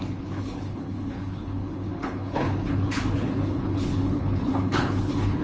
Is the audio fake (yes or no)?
yes